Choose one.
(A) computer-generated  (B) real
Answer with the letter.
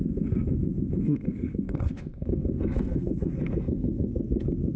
A